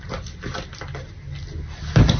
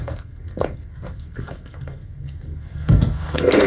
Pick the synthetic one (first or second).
second